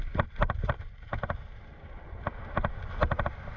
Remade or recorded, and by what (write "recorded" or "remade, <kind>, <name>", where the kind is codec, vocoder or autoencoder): recorded